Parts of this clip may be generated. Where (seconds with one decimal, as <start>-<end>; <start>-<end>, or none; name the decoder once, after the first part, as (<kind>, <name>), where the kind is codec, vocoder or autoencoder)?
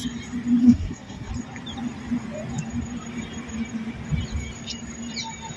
0.6-1.3 (codec, SNAC)